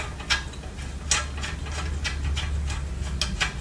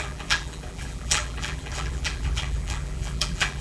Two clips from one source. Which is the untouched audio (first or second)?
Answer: first